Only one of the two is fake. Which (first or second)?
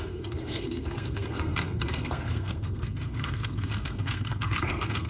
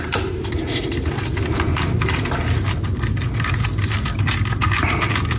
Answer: first